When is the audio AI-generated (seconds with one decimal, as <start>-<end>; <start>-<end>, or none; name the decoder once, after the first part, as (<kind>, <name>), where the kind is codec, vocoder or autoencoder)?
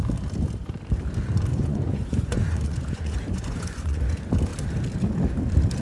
1.5-4.0 (vocoder, Vocos)